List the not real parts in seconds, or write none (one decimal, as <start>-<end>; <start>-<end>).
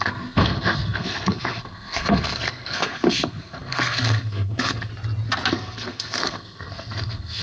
0.0-4.9; 5.5-7.4